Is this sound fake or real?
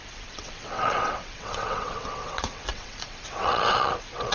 fake